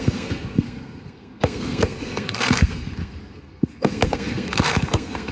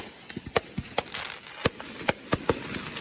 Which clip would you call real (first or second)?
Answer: second